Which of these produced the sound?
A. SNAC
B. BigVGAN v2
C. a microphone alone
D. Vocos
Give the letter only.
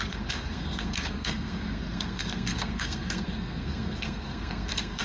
A